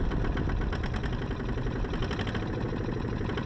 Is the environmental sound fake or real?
real